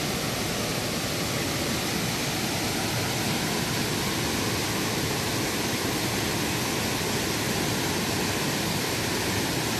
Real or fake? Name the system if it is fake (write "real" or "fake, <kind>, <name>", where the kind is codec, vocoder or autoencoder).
real